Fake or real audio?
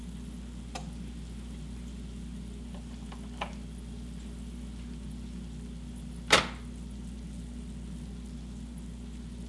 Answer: real